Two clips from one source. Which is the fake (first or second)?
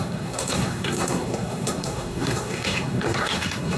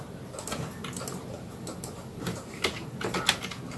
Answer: first